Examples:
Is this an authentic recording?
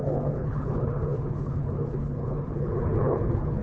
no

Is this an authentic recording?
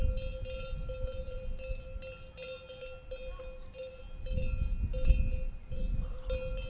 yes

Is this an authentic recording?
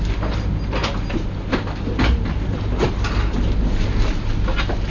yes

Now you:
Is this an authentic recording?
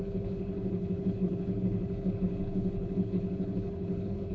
no